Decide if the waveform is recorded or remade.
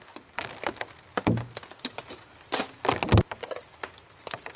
recorded